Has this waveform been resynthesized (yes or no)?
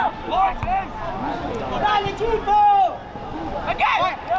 no